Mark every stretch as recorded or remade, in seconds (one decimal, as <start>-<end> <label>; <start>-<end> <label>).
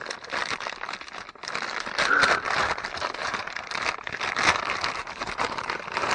0.0-3.2 recorded; 3.2-3.7 remade; 3.7-5.0 recorded; 5.0-6.1 remade